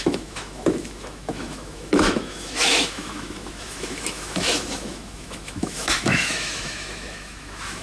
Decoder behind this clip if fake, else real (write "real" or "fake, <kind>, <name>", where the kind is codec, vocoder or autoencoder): fake, autoencoder, DAC-VAE